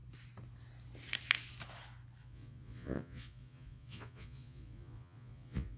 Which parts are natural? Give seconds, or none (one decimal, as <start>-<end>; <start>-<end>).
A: 0.0-2.2